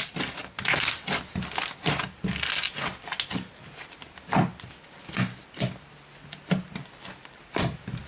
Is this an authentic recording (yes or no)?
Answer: yes